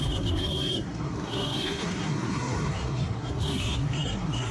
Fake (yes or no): yes